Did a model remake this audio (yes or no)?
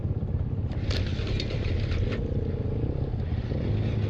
no